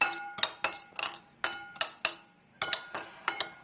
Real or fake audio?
real